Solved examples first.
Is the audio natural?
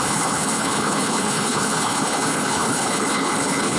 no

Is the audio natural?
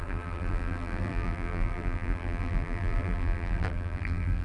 no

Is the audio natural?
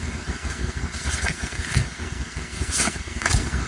no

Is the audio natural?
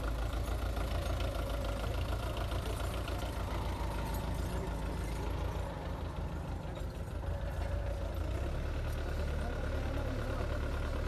yes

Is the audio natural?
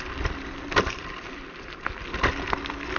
yes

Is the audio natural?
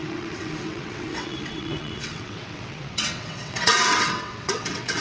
no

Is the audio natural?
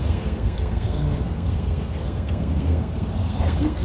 no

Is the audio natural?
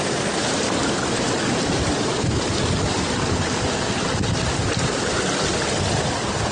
yes